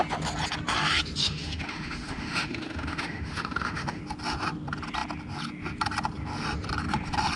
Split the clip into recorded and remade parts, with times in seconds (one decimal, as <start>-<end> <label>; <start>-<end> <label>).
0.0-1.2 recorded; 1.2-4.0 remade; 4.0-7.4 recorded